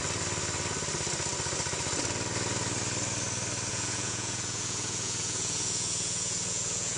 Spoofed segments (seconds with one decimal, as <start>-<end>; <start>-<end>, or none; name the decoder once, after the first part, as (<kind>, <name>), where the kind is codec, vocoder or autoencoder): 3.7-7.0 (vocoder, Vocos)